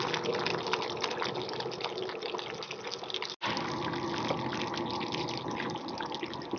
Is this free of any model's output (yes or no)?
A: yes